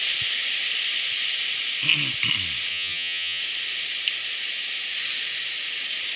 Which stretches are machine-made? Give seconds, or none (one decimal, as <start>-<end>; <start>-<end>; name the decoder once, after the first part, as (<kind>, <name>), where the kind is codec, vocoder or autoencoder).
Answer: 2.7-3.4 (vocoder, HiFi-GAN)